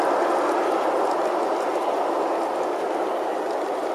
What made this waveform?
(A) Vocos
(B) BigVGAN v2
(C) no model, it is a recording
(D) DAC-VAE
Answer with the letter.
C